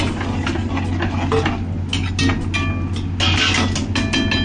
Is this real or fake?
real